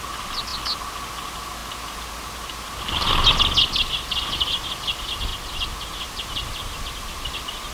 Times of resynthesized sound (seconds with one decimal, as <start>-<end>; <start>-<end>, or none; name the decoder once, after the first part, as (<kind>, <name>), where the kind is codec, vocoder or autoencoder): none

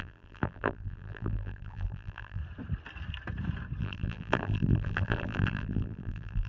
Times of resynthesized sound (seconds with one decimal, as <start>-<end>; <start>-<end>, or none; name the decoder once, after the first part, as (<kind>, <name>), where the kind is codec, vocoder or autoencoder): 0.0-2.4 (vocoder, BigVGAN v2); 3.8-6.5